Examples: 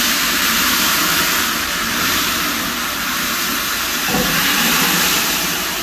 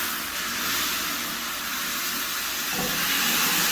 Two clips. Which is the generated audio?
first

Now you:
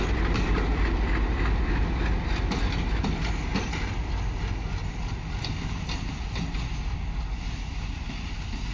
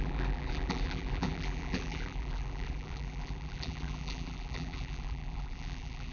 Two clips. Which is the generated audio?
second